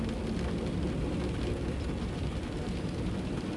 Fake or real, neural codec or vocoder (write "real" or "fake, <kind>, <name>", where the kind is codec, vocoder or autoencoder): real